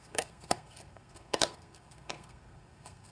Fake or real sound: fake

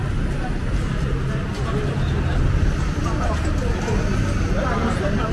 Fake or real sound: real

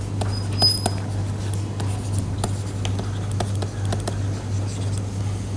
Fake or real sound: real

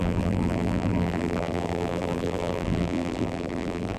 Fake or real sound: fake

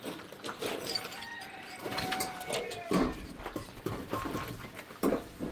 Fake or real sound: fake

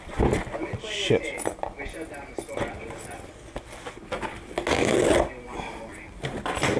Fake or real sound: real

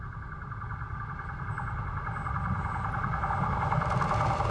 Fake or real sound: real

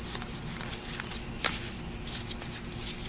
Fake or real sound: real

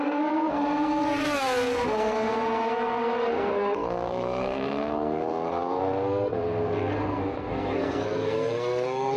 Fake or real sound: fake